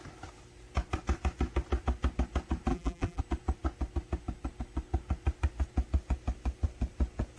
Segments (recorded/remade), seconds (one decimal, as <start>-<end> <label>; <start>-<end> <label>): 0.0-2.7 recorded; 2.7-3.2 remade; 3.2-7.4 recorded